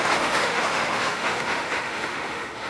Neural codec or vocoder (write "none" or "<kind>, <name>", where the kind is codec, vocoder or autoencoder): autoencoder, DAC-VAE